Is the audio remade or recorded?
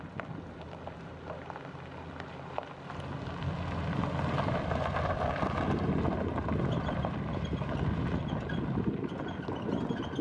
recorded